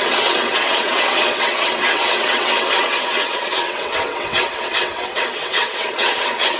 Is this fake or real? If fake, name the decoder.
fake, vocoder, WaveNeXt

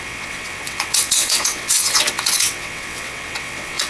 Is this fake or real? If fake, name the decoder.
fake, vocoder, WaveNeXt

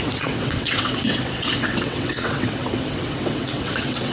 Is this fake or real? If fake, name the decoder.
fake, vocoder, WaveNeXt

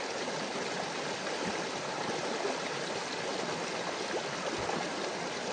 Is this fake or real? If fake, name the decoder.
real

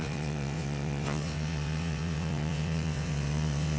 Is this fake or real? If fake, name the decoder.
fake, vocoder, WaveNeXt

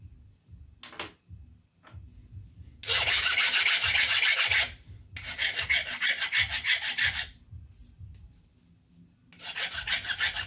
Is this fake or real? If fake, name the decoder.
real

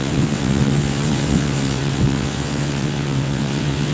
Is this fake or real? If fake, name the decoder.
fake, vocoder, WaveNeXt